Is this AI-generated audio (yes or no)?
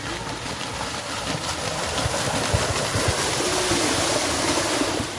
no